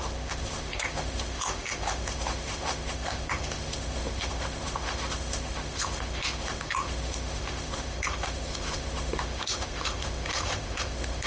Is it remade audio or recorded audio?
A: remade